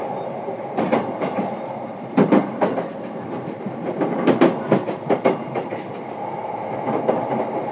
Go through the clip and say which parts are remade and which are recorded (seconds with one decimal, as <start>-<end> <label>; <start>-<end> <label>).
0.0-4.3 remade; 4.3-7.7 recorded